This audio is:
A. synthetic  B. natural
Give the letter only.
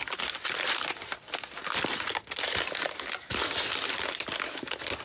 B